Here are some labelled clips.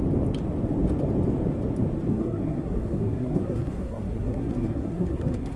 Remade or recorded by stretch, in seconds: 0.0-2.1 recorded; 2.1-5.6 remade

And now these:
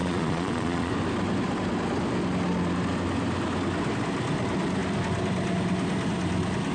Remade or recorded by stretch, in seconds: 0.0-0.9 remade; 0.9-6.7 recorded

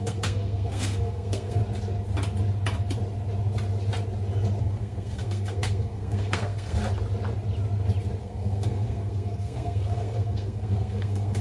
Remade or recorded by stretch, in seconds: 0.0-1.6 remade; 1.6-4.6 recorded; 4.6-6.8 remade; 6.8-8.2 recorded; 8.2-11.4 remade